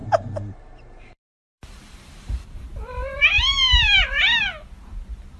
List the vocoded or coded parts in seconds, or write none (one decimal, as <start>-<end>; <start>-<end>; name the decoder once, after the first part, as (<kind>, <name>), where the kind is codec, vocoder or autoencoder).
0.0-2.7 (vocoder, BigVGAN v2)